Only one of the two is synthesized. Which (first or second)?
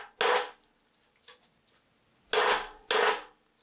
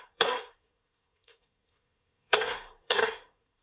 second